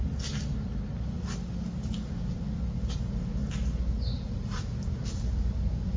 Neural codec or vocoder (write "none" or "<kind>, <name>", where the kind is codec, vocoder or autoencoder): none